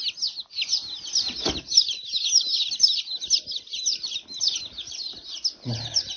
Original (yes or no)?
yes